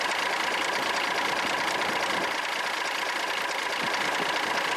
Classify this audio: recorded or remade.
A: recorded